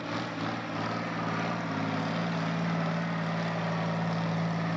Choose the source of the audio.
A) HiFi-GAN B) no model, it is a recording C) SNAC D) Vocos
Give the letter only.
B